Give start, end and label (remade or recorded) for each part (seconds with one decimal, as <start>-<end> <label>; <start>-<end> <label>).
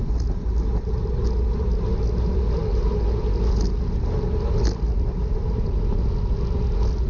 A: 0.0-7.1 recorded